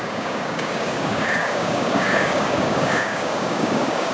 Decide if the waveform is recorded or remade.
remade